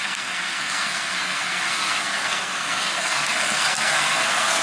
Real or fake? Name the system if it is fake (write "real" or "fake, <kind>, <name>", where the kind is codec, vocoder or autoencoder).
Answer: fake, codec, SNAC